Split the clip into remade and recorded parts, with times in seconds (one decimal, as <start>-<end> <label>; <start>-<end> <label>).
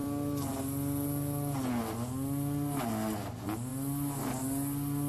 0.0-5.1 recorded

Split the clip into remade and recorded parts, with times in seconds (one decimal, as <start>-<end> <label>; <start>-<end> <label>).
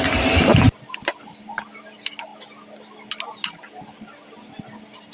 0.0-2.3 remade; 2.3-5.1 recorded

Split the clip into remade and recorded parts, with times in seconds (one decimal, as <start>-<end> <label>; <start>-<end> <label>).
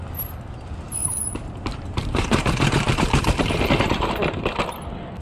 0.0-1.0 recorded; 1.0-4.1 remade; 4.1-5.2 recorded